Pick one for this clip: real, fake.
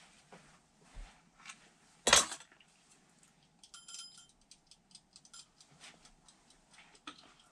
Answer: real